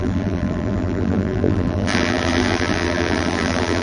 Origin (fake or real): fake